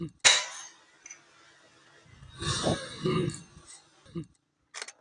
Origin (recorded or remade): recorded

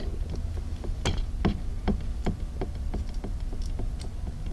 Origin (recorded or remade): recorded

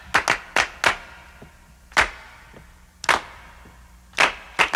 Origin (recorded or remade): recorded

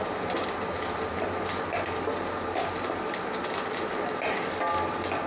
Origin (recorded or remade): remade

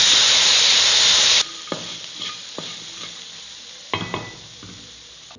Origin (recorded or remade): recorded